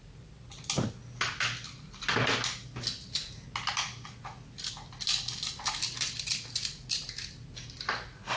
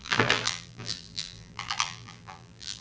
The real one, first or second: first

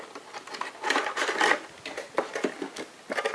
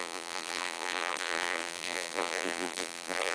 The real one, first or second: first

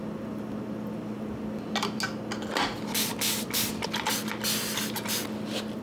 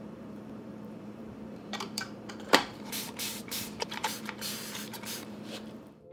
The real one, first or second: first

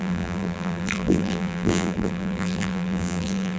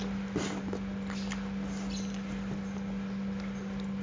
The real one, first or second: second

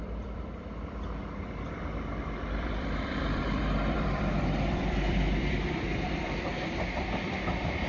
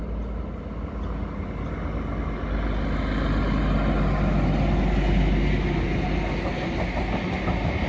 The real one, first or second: second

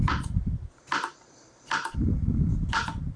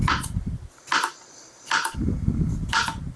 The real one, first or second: second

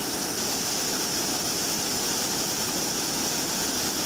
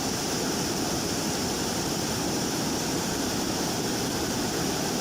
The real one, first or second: first